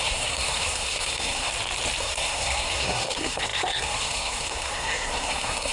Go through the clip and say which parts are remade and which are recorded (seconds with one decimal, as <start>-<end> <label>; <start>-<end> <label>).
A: 0.0-1.5 remade; 1.5-2.0 recorded; 2.0-5.7 remade

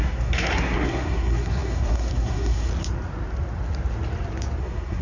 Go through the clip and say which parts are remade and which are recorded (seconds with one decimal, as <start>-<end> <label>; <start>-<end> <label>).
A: 0.0-2.7 remade; 2.7-4.6 recorded; 4.6-5.0 remade

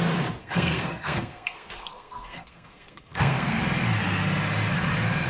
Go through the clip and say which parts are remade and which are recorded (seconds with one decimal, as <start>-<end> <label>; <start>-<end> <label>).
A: 0.0-0.4 recorded; 0.4-3.6 remade; 3.6-5.3 recorded

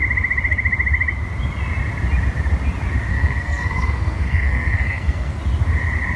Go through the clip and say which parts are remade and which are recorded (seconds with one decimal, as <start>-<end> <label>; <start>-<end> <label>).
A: 0.0-3.1 recorded; 3.1-5.4 remade; 5.4-6.2 recorded

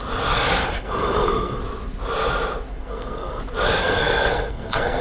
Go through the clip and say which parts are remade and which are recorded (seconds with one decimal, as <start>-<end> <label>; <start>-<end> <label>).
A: 0.0-0.6 recorded; 0.6-1.6 remade; 1.6-2.7 recorded; 2.7-3.4 remade; 3.4-3.8 recorded; 3.8-5.0 remade

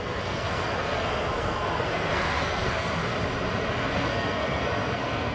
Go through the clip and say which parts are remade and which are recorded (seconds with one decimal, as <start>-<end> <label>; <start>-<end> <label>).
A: 0.0-3.0 remade; 3.0-3.7 recorded; 3.7-5.3 remade

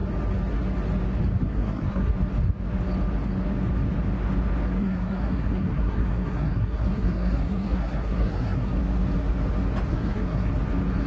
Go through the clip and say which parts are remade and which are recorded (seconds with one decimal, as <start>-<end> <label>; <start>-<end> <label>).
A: 0.0-1.5 recorded; 1.5-2.1 remade; 2.1-4.8 recorded; 4.8-8.8 remade; 8.8-9.9 recorded; 9.9-10.5 remade; 10.5-11.1 recorded